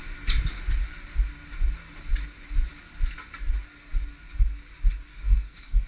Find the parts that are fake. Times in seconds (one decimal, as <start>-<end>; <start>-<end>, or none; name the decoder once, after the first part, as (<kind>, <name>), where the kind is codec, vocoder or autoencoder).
5.1-5.9 (codec, SNAC)